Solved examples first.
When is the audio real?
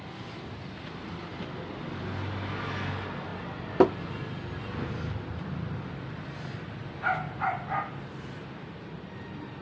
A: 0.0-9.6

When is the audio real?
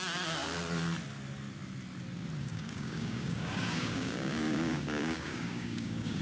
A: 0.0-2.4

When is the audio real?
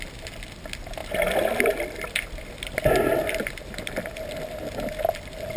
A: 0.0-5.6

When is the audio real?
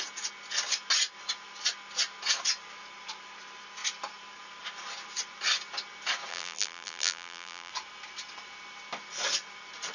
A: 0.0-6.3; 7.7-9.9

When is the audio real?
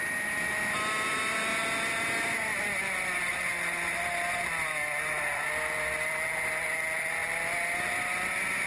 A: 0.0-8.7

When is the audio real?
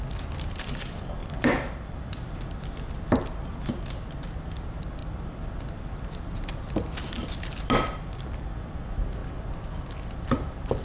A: 0.0-1.2; 2.4-5.0; 5.7-9.2